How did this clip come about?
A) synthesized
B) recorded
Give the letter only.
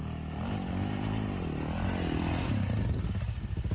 B